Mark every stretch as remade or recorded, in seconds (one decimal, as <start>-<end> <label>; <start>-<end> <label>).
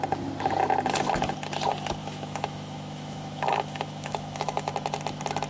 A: 0.0-2.0 recorded; 2.0-4.7 remade; 4.7-5.5 recorded